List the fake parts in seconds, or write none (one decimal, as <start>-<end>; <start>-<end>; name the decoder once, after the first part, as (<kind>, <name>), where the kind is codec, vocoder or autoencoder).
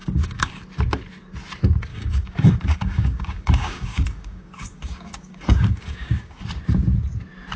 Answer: 0.0-0.6 (codec, DAC); 1.9-6.4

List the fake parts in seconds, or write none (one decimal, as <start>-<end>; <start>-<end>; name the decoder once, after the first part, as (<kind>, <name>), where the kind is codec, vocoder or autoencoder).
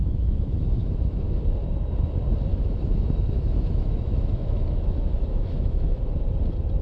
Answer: 0.0-1.3 (autoencoder, DAC-VAE); 2.5-6.0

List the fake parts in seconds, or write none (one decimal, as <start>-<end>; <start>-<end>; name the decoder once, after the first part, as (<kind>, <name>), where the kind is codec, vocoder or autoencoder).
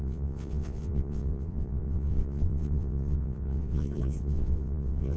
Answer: 0.0-5.2 (vocoder, WaveNeXt)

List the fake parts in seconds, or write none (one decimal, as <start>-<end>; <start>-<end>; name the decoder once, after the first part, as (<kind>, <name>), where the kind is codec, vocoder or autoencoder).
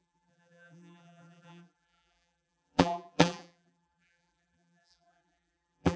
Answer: 0.0-6.0 (vocoder, BigVGAN v2)